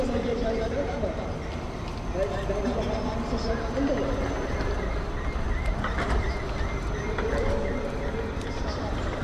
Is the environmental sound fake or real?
real